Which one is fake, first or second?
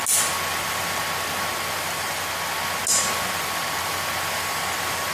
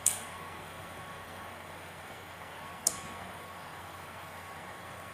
second